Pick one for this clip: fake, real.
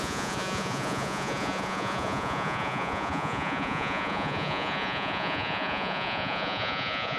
fake